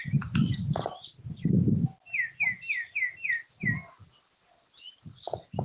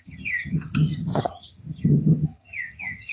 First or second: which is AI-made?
second